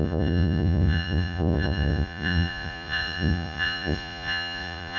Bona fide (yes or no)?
no